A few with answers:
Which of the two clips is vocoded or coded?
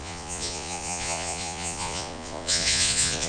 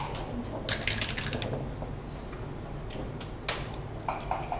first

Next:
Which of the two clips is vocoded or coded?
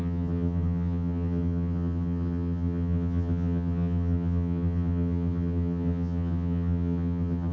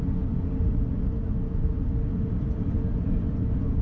first